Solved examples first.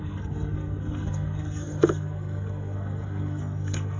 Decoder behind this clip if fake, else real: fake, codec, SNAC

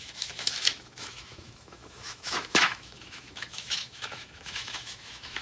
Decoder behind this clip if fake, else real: fake, autoencoder, DAC-VAE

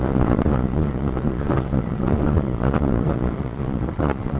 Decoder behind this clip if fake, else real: fake, vocoder, Vocos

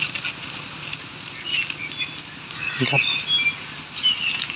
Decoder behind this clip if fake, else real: real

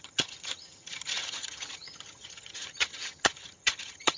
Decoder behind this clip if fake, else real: fake, vocoder, HiFi-GAN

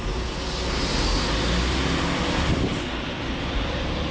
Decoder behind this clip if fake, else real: real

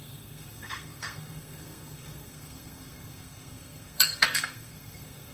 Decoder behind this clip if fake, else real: fake, codec, SNAC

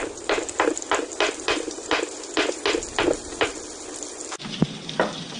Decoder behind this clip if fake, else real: real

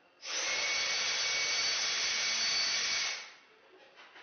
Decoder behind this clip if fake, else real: real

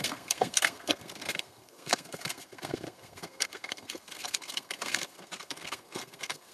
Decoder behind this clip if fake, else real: fake, codec, SNAC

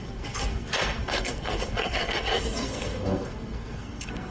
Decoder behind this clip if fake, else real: fake, codec, SNAC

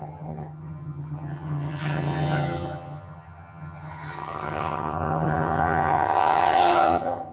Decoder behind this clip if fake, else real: fake, vocoder, HiFi-GAN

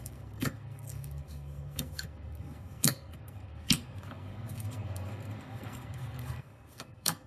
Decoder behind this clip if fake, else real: fake, codec, SNAC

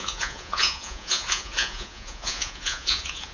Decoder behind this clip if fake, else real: fake, vocoder, Vocos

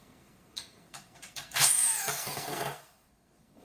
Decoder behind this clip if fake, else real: fake, codec, SNAC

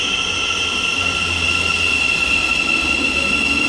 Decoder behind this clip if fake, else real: real